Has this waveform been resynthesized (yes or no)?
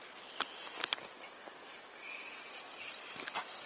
no